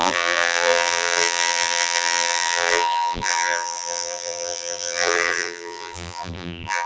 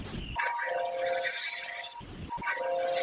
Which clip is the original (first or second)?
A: second